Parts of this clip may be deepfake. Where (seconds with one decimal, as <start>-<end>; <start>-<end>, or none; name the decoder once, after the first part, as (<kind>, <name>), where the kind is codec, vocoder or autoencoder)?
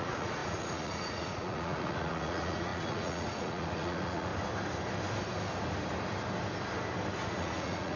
0.0-4.3 (vocoder, Vocos); 7.4-8.0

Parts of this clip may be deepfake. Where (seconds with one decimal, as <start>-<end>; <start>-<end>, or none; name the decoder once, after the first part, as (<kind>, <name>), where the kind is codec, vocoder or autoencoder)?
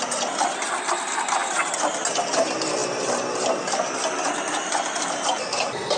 none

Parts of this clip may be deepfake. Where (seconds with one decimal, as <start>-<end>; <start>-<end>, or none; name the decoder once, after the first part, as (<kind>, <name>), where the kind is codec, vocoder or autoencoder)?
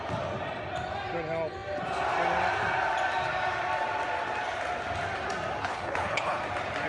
5.6-6.4 (codec, HILCodec)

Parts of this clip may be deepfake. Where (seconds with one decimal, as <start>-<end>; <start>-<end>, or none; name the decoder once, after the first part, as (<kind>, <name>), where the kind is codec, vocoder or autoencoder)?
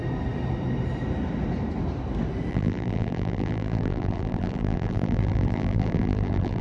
2.5-6.6 (vocoder, BigVGAN v2)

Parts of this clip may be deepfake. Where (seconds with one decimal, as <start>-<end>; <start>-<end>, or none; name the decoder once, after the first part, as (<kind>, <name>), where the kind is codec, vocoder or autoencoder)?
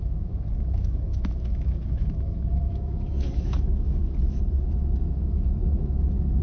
0.0-4.0 (autoencoder, DAC-VAE); 5.2-6.4